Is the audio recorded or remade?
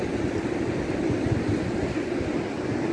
recorded